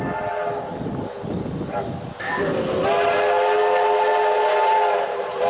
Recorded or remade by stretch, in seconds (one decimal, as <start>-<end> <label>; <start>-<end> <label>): 0.0-5.5 recorded